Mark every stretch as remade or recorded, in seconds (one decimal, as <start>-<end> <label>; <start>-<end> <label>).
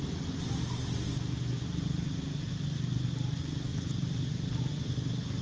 0.0-3.7 recorded; 3.7-4.6 remade; 4.6-5.4 recorded